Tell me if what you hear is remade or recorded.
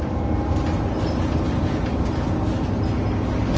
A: recorded